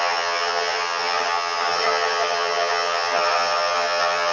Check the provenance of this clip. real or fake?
fake